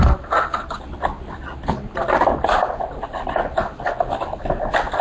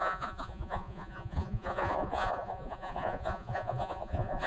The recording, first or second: first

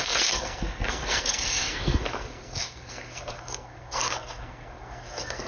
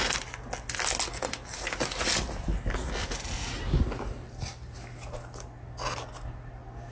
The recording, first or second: second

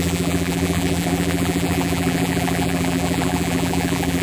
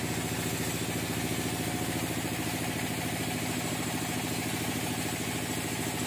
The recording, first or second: second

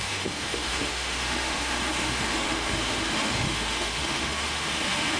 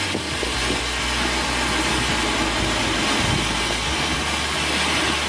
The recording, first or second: second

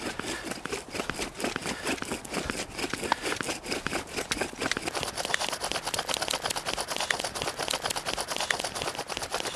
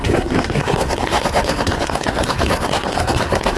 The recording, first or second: first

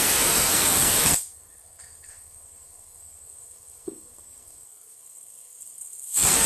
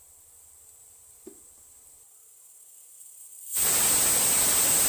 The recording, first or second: second